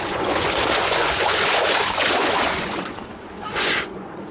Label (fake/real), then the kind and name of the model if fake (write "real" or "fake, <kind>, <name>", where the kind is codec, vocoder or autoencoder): fake, vocoder, Vocos